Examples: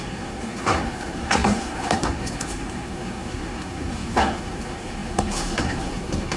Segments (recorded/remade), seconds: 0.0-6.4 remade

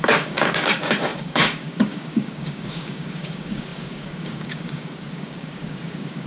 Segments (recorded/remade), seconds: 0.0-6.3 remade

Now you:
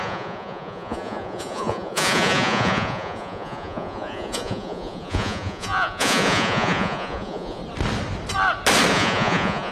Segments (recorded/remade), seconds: 0.0-7.6 remade; 7.6-8.9 recorded; 8.9-9.7 remade